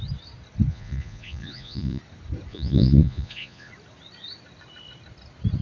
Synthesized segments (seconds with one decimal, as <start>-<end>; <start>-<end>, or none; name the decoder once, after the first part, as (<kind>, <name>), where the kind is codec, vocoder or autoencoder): 0.7-2.0 (vocoder, Vocos); 2.5-3.7